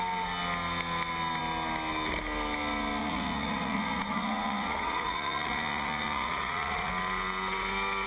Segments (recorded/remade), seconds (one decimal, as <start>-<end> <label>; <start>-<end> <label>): 0.0-3.0 recorded; 3.0-6.9 remade; 6.9-8.1 recorded